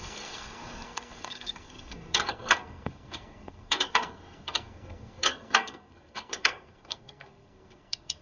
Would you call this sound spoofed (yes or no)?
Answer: yes